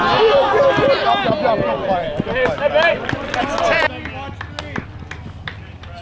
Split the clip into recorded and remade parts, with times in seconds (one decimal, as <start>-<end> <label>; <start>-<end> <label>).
0.0-6.0 recorded